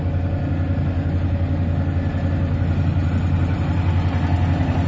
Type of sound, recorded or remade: recorded